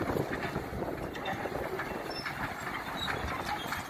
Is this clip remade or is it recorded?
recorded